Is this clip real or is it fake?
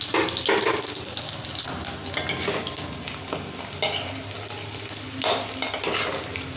real